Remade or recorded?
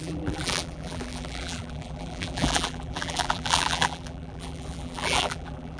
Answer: remade